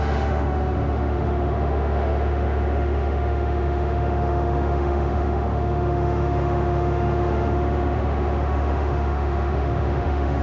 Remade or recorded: remade